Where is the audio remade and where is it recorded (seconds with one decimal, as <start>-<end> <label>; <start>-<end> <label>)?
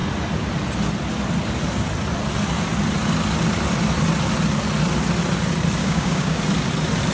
0.0-5.8 recorded; 5.8-6.4 remade; 6.4-7.1 recorded